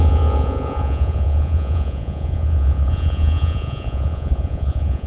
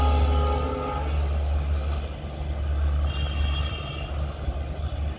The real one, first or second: second